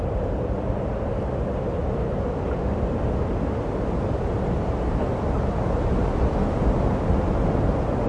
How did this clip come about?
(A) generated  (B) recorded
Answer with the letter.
B